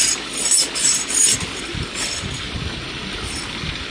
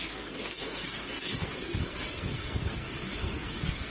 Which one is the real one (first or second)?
first